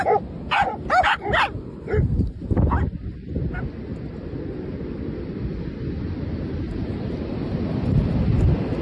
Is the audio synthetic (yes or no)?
no